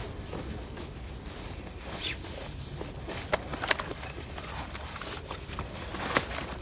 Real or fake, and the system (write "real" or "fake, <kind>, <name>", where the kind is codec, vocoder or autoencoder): real